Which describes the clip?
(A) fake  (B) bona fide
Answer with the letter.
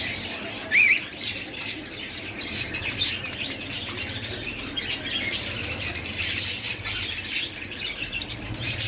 A